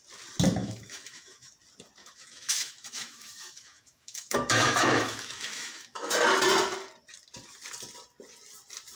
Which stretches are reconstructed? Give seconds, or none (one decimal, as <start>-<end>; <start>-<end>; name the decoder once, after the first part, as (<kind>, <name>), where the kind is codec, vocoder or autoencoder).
0.6-1.5 (autoencoder, DAC-VAE); 2.0-6.1